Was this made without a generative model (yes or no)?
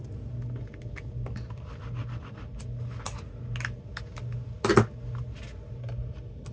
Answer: yes